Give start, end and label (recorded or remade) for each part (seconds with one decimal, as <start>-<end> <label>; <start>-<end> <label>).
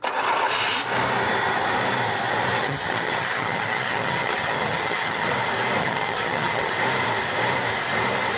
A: 0.0-2.6 recorded; 2.6-5.3 remade; 5.3-5.8 recorded; 5.8-6.7 remade; 6.7-8.4 recorded